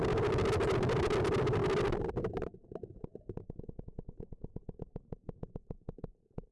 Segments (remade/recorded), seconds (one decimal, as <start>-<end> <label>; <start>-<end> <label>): 0.0-6.5 recorded